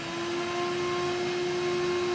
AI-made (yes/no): no